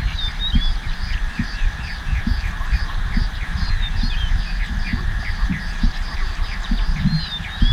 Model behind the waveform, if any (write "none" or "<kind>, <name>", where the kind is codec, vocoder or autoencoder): none